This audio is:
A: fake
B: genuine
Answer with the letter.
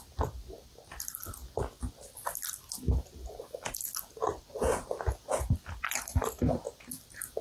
B